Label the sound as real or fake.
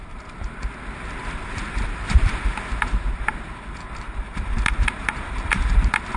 real